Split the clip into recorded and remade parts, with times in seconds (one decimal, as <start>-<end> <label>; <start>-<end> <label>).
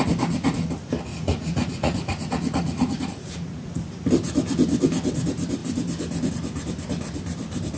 0.0-1.1 recorded; 1.1-3.7 remade; 3.7-7.8 recorded